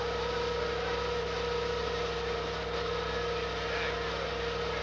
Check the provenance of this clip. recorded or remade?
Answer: recorded